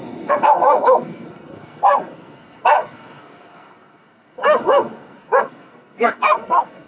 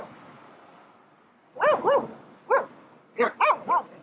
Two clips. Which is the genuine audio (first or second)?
second